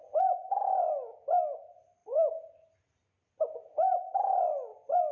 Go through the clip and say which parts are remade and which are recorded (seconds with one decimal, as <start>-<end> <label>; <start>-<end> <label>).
0.0-5.1 recorded